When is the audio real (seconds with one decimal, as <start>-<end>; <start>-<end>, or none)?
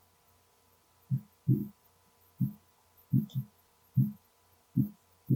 0.0-5.4